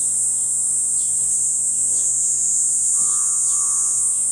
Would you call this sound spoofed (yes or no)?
yes